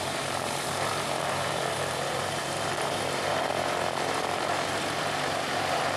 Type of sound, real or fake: fake